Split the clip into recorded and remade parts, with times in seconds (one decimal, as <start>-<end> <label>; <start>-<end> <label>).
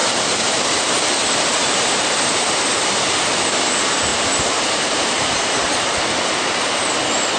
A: 0.0-1.0 remade; 1.0-1.6 recorded; 1.6-3.2 remade; 3.2-4.1 recorded; 4.1-6.0 remade; 6.0-7.4 recorded